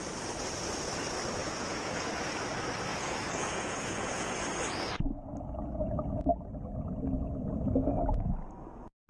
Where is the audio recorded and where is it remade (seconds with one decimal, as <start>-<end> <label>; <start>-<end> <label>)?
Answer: 0.0-1.4 recorded; 1.4-2.3 remade; 2.3-2.9 recorded; 2.9-4.3 remade; 4.3-9.1 recorded